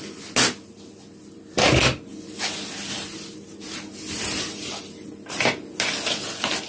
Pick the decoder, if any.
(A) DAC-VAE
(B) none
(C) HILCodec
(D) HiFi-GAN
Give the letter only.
B